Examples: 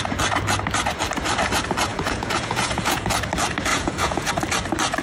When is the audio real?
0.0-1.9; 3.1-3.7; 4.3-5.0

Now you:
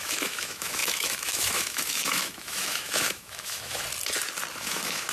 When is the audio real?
3.8-4.6